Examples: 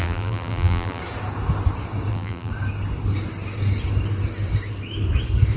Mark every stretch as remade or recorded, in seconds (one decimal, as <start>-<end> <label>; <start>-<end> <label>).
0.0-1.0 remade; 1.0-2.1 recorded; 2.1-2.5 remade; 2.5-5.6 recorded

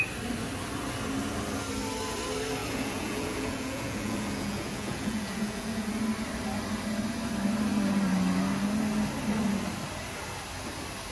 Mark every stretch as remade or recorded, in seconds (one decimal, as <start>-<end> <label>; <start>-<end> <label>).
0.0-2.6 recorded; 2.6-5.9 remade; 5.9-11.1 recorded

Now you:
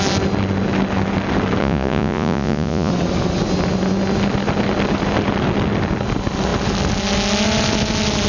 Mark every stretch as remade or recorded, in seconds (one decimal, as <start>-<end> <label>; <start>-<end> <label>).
0.0-1.6 recorded; 1.6-2.9 remade; 2.9-8.3 recorded